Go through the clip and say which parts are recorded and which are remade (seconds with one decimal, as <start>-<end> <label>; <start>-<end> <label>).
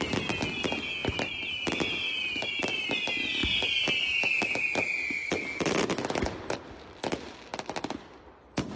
0.0-1.0 recorded; 1.0-1.5 remade; 1.5-8.8 recorded